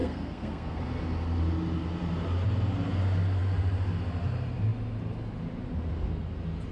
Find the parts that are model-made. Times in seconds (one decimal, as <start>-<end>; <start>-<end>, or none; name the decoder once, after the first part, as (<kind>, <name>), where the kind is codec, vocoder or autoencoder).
0.0-0.8 (codec, SNAC)